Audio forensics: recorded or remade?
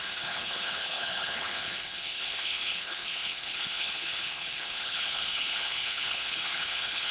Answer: remade